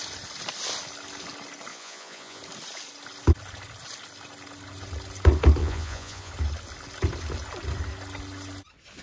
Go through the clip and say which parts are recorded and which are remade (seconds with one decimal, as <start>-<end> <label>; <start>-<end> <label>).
0.0-1.7 recorded; 1.7-2.4 remade; 2.4-5.6 recorded; 5.6-6.3 remade; 6.3-9.0 recorded